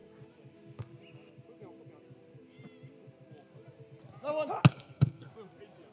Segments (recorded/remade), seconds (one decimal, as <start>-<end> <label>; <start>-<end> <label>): 0.0-4.7 recorded; 4.7-5.3 remade; 5.3-5.9 recorded